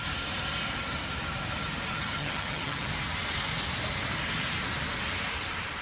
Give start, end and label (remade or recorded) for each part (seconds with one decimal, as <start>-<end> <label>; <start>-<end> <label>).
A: 0.0-1.9 recorded; 1.9-2.9 remade; 2.9-5.8 recorded